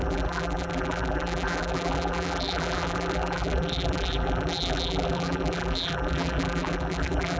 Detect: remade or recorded remade